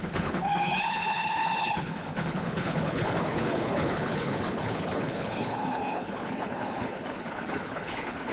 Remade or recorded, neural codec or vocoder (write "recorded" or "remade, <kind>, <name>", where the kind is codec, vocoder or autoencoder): remade, codec, HILCodec